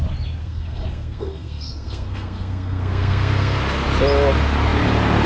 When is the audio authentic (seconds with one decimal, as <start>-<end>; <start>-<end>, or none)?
0.0-0.4; 3.6-5.3